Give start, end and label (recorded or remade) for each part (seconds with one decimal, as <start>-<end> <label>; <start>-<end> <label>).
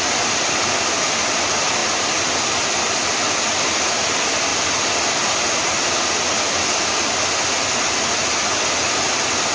0.0-9.5 recorded